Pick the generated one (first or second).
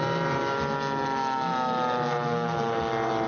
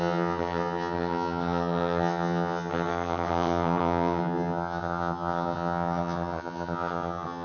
second